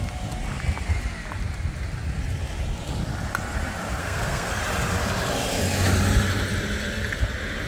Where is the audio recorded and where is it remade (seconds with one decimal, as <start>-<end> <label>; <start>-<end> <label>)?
0.0-4.0 recorded; 4.0-4.6 remade; 4.6-7.7 recorded